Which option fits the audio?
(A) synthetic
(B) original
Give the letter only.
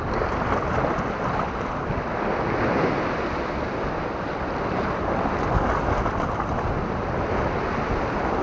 B